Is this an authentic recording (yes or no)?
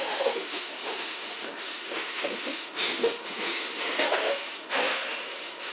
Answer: no